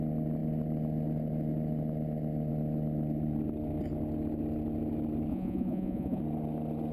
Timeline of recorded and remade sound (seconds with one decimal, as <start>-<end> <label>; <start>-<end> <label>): 0.0-5.3 recorded; 5.3-6.2 remade; 6.2-6.9 recorded